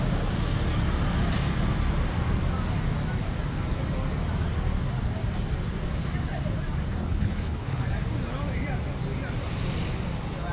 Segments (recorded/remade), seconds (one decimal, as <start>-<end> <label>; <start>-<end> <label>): 0.0-7.0 recorded; 7.0-7.8 remade; 7.8-10.5 recorded